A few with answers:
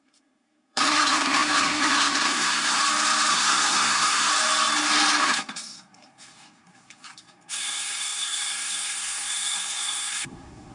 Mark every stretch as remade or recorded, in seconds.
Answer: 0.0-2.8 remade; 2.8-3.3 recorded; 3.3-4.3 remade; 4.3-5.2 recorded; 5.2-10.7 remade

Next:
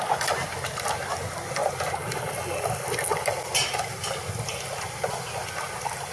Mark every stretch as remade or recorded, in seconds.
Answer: 0.0-6.1 recorded